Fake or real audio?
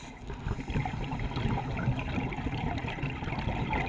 real